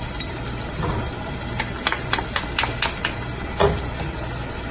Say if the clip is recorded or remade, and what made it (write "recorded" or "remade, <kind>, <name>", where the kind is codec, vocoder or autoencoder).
recorded